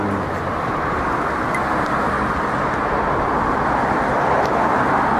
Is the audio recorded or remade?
recorded